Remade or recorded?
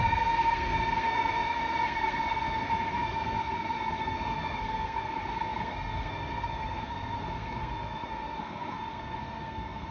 remade